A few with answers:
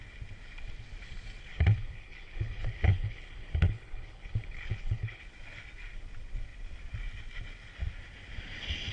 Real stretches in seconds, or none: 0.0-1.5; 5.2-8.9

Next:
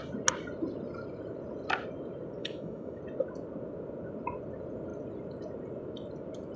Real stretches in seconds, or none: 0.0-2.4; 3.0-6.6

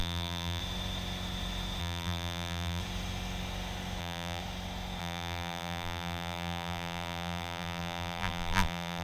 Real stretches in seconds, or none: 0.6-1.8; 2.8-4.0; 4.4-5.0